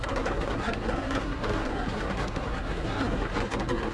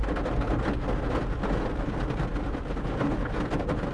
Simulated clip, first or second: first